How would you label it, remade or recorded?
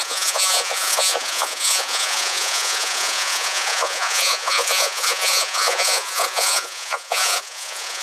remade